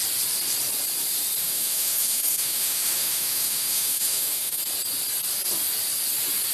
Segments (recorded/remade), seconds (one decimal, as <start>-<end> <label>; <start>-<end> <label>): 0.0-1.4 recorded; 1.4-4.6 remade; 4.6-6.5 recorded